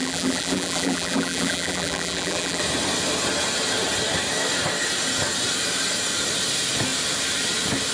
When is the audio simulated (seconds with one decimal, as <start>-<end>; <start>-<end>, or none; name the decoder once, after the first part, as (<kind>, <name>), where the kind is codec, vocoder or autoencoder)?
0.0-2.6 (vocoder, BigVGAN v2)